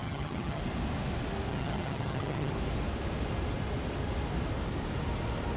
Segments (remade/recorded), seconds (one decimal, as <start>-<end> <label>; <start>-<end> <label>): 0.0-0.6 remade; 0.6-1.5 recorded; 1.5-2.5 remade; 2.5-5.6 recorded